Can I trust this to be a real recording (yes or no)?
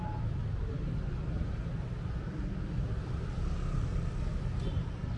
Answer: yes